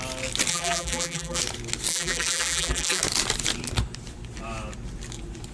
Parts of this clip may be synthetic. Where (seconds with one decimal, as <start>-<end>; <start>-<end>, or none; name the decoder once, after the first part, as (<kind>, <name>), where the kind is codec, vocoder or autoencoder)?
0.5-1.4 (vocoder, BigVGAN v2); 1.9-3.0